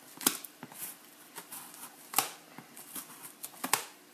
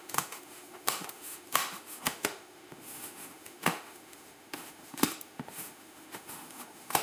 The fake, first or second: second